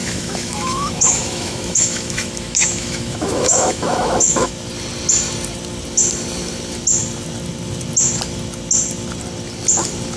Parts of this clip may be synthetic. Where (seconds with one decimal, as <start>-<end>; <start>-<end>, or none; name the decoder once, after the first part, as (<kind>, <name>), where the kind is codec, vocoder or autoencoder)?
0.0-4.5 (autoencoder, DAC-VAE)